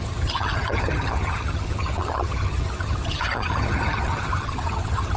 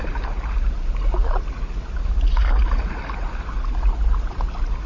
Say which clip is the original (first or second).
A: second